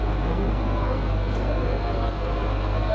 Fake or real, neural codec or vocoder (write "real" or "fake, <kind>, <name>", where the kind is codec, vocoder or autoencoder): fake, codec, SNAC